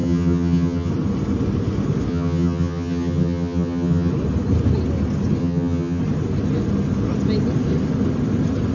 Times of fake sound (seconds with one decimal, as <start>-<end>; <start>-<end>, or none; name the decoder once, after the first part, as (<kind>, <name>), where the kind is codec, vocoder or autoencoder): 0.0-0.9 (vocoder, HiFi-GAN); 2.1-4.1; 5.4-6.0